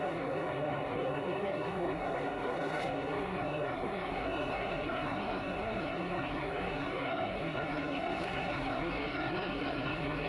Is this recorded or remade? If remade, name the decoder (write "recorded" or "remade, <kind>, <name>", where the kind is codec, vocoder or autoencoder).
remade, codec, SNAC